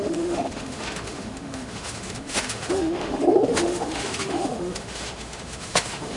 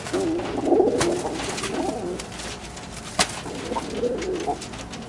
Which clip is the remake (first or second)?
first